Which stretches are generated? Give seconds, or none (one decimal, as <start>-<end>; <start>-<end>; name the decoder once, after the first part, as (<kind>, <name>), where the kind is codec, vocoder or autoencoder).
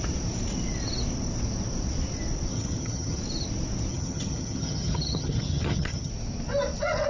2.5-3.2 (vocoder, HiFi-GAN); 3.9-6.1